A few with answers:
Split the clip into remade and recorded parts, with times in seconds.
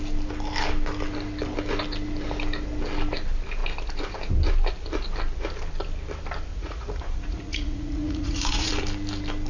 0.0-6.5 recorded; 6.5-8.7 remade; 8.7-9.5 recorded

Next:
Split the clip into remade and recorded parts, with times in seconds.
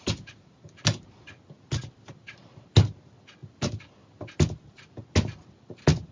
0.0-6.1 recorded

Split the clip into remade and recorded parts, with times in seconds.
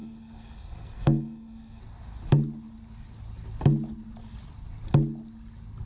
0.0-1.8 remade; 1.8-5.9 recorded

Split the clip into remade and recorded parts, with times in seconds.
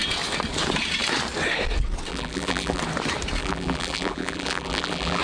0.0-2.1 recorded; 2.1-2.8 remade; 2.8-3.4 recorded; 3.4-5.2 remade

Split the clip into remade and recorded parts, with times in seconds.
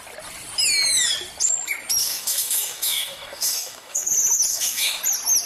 0.0-2.0 recorded; 2.0-4.1 remade; 4.1-4.5 recorded; 4.5-5.0 remade; 5.0-5.5 recorded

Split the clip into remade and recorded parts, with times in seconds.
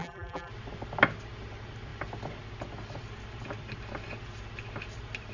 0.0-0.5 remade; 0.5-5.3 recorded